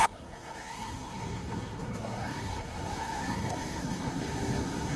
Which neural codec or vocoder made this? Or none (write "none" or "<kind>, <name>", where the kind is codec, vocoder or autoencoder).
codec, SNAC